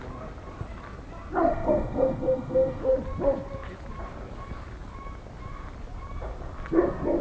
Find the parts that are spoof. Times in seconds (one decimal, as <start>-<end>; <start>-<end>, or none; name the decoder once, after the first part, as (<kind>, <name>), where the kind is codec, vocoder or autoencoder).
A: 1.5-2.8 (codec, SNAC)